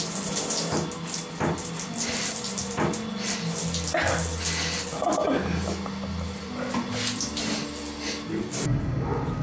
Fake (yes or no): no